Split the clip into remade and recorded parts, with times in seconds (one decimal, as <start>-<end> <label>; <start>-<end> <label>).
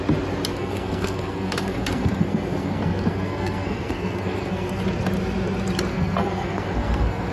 0.0-0.5 recorded; 0.5-4.8 remade; 4.8-5.9 recorded; 5.9-7.3 remade